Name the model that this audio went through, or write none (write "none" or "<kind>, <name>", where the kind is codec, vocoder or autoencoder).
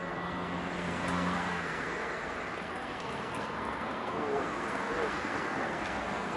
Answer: codec, SNAC